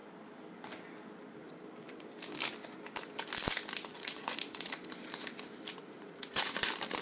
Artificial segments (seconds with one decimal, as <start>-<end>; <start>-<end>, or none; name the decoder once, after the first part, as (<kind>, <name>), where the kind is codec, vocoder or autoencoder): 3.9-4.7 (vocoder, Vocos); 5.8-6.6